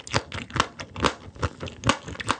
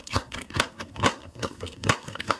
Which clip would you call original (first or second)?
first